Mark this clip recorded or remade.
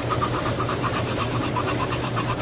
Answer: remade